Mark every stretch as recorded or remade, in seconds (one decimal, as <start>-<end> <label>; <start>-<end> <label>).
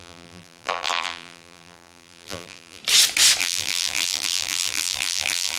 0.0-2.8 remade; 2.8-3.4 recorded; 3.4-5.6 remade